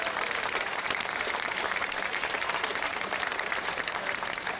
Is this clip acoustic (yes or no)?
no